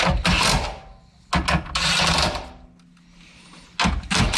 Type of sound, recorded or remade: recorded